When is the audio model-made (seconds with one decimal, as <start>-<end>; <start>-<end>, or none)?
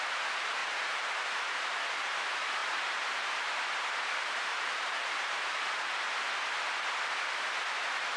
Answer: 0.6-1.6; 2.6-5.4